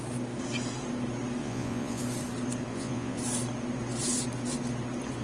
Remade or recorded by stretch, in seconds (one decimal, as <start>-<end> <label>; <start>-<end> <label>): 0.0-1.4 recorded; 1.4-2.0 remade; 2.0-2.7 recorded; 2.7-3.2 remade; 3.2-5.2 recorded

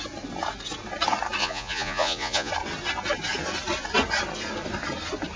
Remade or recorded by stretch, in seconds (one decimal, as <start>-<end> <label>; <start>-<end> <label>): 0.0-1.4 recorded; 1.4-2.5 remade; 2.5-5.4 recorded

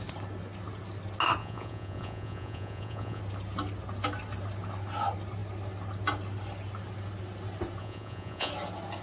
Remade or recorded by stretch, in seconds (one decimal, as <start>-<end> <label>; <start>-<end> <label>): 0.0-1.4 recorded; 1.4-3.2 remade; 3.2-7.8 recorded; 7.8-8.5 remade; 8.5-9.0 recorded

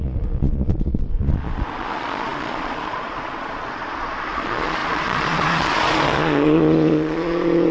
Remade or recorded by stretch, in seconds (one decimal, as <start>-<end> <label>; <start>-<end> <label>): 0.0-7.7 remade

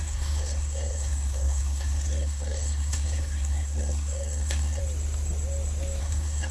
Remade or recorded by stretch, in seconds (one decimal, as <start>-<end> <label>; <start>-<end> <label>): 0.0-4.8 remade; 4.8-6.0 recorded; 6.0-6.5 remade

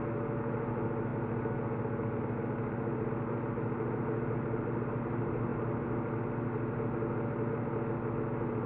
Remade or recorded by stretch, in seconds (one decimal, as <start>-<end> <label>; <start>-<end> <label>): 0.0-8.7 recorded

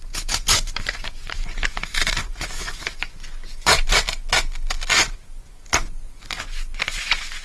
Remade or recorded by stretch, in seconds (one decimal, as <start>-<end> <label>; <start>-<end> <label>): 0.0-4.0 remade; 4.0-5.0 recorded; 5.0-7.4 remade

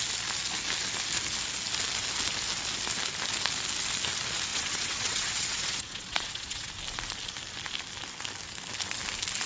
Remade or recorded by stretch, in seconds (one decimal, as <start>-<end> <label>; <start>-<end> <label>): 0.0-4.5 recorded; 4.5-6.7 remade; 6.7-9.5 recorded